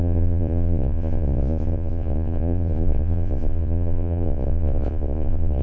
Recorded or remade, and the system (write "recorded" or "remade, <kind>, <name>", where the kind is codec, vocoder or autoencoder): remade, vocoder, Vocos